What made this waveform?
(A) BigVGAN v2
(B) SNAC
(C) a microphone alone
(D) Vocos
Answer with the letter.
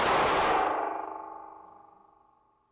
C